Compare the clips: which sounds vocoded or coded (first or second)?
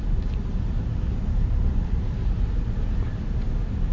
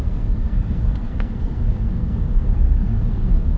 second